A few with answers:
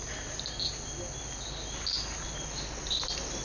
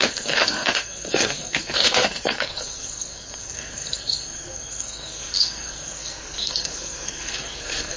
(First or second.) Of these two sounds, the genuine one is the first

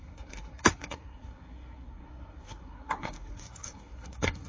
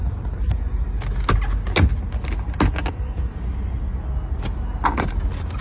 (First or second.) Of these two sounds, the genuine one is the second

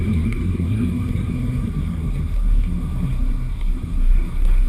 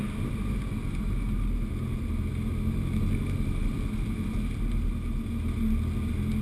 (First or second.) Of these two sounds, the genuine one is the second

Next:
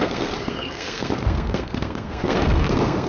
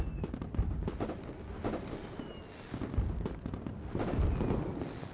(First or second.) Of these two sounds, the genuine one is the second